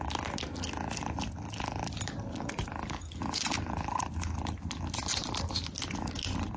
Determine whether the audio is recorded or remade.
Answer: recorded